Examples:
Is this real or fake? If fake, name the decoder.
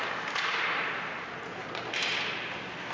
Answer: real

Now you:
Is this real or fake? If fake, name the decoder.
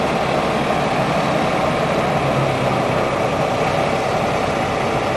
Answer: real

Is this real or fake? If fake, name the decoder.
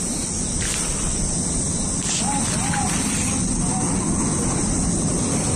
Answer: real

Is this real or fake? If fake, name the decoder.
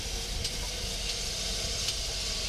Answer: real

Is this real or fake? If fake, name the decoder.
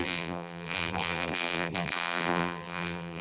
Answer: fake, vocoder, BigVGAN v2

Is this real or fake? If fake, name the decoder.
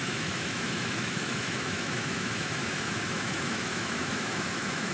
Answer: fake, autoencoder, DAC-VAE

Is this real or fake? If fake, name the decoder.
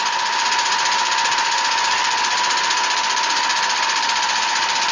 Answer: fake, vocoder, BigVGAN v2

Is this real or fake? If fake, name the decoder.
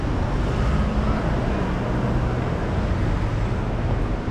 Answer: real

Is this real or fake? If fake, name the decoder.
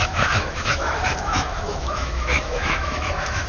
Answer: fake, autoencoder, DAC-VAE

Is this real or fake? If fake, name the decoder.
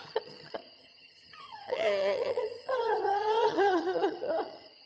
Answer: fake, vocoder, HiFi-GAN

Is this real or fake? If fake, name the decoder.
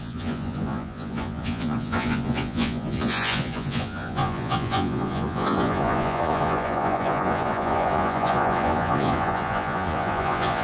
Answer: fake, vocoder, Vocos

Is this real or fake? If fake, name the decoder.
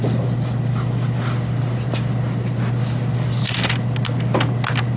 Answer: real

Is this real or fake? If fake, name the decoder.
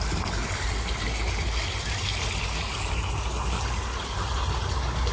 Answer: real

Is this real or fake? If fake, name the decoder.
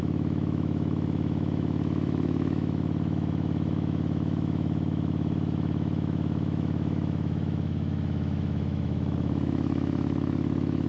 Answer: fake, autoencoder, DAC-VAE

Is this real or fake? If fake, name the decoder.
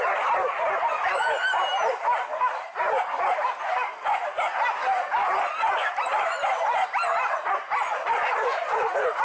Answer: real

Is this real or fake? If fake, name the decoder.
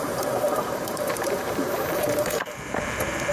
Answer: fake, vocoder, BigVGAN v2